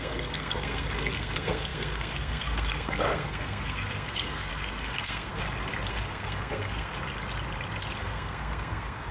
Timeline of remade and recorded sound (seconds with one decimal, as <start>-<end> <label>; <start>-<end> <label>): 0.0-5.4 remade; 5.4-5.9 recorded; 5.9-6.9 remade; 6.9-8.0 recorded; 8.0-9.1 remade